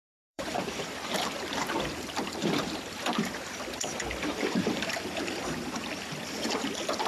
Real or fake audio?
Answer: fake